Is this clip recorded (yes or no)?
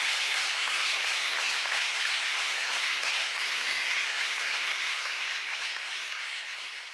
no